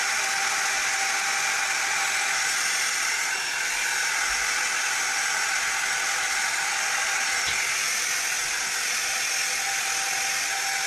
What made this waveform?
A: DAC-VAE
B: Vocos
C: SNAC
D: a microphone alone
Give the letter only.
D